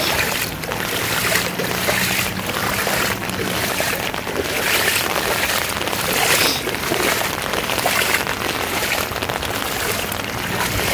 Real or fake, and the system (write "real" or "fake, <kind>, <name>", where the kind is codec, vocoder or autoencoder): real